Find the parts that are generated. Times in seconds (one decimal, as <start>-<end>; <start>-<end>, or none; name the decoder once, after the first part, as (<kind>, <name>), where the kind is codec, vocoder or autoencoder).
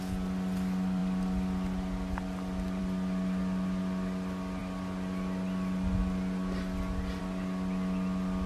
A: none